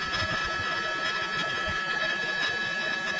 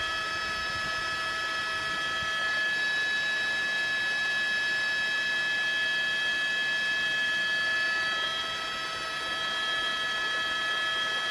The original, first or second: second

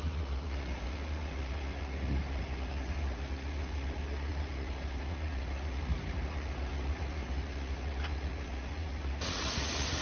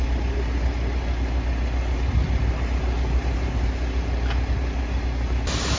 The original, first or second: second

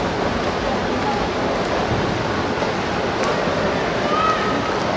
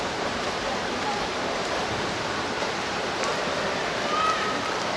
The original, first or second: first